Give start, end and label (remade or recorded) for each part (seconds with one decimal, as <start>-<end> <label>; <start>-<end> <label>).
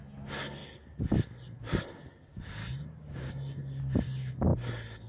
0.0-2.6 recorded; 2.6-3.8 remade; 3.8-5.1 recorded